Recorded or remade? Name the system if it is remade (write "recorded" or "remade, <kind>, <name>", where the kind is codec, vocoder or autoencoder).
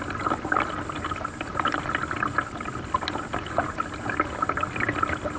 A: recorded